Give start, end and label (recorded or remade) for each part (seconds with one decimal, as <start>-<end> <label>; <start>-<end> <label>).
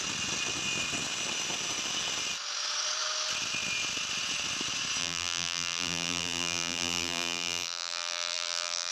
0.0-5.0 recorded; 5.0-8.9 remade